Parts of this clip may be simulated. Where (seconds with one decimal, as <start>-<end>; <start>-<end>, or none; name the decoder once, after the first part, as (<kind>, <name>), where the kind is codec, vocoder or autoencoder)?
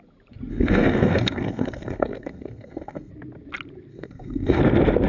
0.5-3.1 (codec, SNAC); 3.9-4.6